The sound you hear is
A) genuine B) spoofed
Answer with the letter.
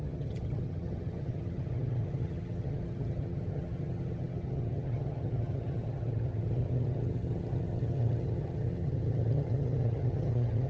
B